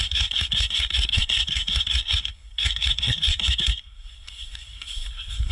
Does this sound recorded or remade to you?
remade